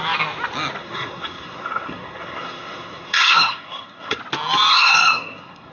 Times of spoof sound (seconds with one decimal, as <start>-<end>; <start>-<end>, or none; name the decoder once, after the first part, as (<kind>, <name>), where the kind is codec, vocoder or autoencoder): 0.8-4.2 (codec, SNAC); 4.7-5.7